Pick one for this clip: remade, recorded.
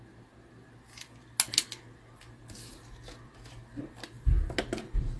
recorded